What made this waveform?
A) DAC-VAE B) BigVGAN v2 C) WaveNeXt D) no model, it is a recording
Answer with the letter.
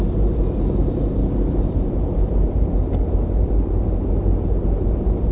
B